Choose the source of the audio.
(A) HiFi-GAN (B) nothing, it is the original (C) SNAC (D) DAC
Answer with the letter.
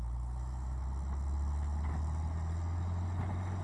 B